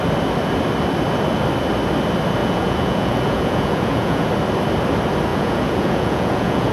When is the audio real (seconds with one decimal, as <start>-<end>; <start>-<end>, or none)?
0.0-2.4; 4.3-5.3